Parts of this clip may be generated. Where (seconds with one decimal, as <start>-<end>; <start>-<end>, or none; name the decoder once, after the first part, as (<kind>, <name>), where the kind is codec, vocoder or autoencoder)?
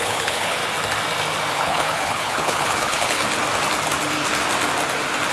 0.0-0.6 (codec, HILCodec); 1.5-3.2